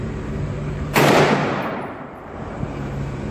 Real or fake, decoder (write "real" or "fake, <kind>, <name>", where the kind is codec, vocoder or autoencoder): fake, vocoder, BigVGAN v2